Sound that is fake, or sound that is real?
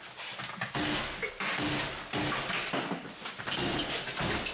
real